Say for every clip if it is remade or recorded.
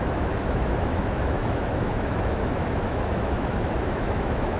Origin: remade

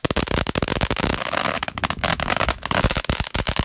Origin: remade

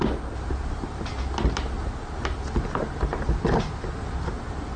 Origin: recorded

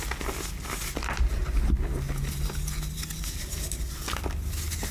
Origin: recorded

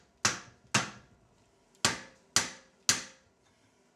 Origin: recorded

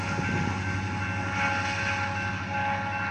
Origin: recorded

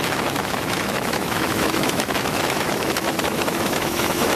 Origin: remade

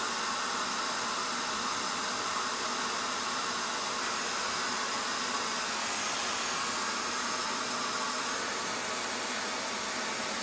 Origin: recorded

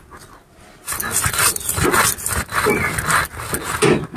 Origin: recorded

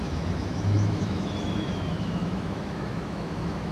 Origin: remade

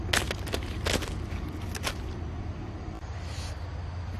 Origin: recorded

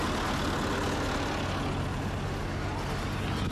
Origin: recorded